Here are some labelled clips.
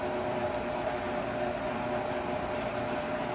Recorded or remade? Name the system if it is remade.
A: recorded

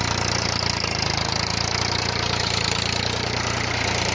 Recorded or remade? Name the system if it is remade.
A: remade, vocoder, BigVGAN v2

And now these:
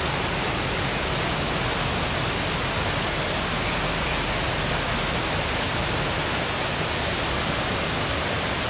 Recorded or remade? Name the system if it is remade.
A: recorded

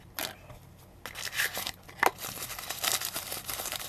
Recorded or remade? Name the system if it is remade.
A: recorded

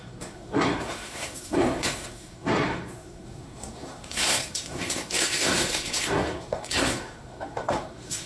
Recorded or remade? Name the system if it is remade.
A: remade, codec, SNAC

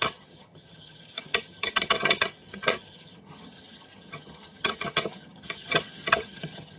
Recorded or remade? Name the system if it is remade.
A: remade, vocoder, HiFi-GAN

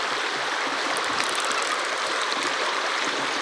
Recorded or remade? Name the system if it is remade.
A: remade, vocoder, BigVGAN v2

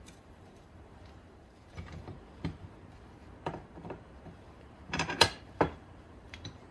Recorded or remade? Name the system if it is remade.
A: remade, vocoder, BigVGAN v2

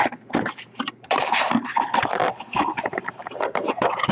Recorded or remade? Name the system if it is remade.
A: remade, vocoder, BigVGAN v2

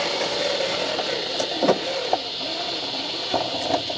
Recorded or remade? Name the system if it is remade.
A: recorded